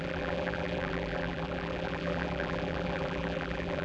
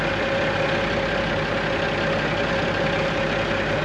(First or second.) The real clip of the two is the second